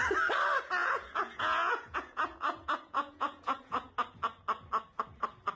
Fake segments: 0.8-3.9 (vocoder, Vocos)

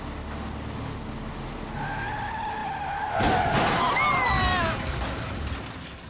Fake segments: none

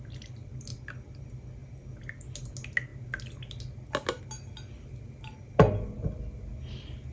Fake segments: none

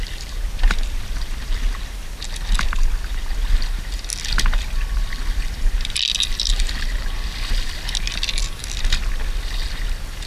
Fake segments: 0.0-1.9 (vocoder, BigVGAN v2)

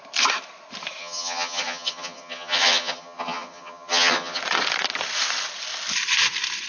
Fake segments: 1.0-4.4 (vocoder, HiFi-GAN)

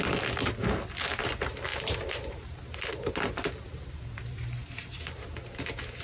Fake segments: 1.7-5.3 (vocoder, BigVGAN v2)

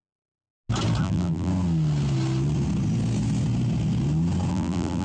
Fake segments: 0.0-0.5 (vocoder, BigVGAN v2); 1.0-1.5; 4.5-5.0